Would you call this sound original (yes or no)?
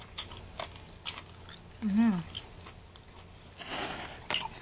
yes